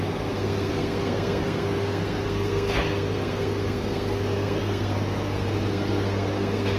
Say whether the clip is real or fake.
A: fake